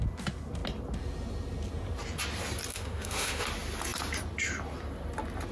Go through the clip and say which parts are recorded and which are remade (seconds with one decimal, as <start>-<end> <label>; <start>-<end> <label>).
0.0-2.7 recorded; 2.7-3.4 remade; 3.4-5.5 recorded